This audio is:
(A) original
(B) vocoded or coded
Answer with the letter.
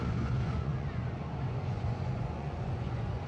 B